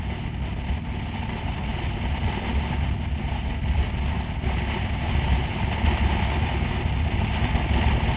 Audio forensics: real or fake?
real